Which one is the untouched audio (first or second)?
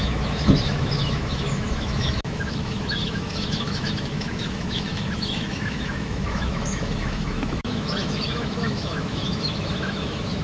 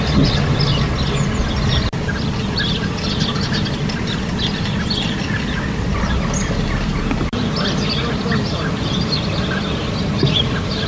second